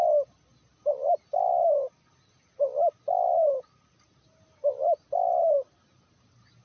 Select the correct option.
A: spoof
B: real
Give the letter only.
B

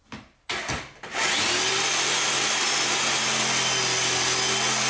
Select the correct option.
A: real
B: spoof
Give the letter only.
A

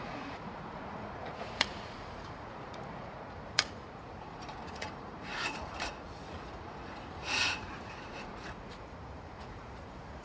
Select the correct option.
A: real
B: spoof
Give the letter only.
B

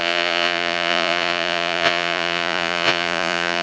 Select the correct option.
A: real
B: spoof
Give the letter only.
B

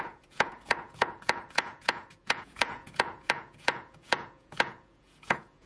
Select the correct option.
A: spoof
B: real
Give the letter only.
A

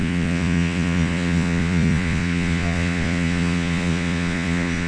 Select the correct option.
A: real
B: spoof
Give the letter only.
B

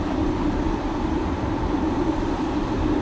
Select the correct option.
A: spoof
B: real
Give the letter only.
B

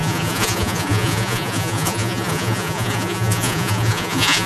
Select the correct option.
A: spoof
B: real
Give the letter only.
A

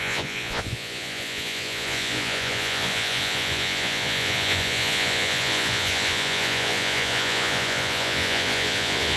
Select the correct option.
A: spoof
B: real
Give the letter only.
A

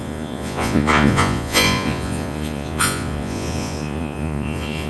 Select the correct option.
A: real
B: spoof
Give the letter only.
B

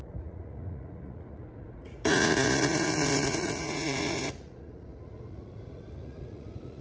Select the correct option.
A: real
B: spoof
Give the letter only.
B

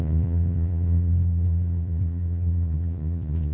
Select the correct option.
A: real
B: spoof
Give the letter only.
B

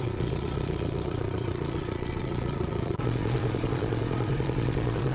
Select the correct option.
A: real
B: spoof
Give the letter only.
B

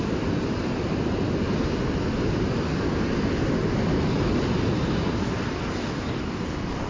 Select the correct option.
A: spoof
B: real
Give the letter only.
B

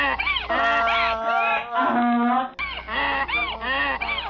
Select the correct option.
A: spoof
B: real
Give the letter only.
B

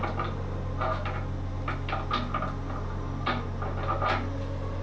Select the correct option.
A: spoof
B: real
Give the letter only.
B